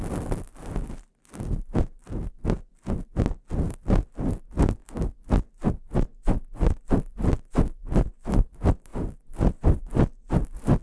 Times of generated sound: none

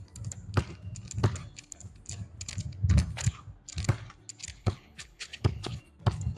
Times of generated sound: 4.6-5.8

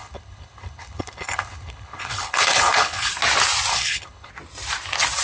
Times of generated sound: 0.0-3.1; 3.7-4.3

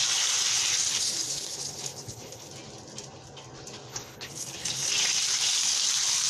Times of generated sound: 0.9-2.5; 3.9-4.9

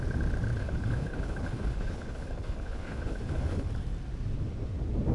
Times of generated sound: 0.6-3.7